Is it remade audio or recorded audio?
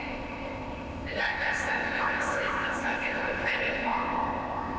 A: remade